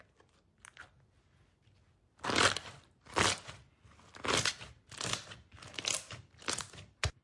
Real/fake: real